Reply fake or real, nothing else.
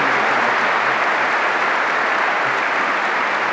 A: real